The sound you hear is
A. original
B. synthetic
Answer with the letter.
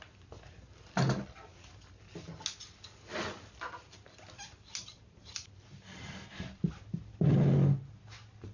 A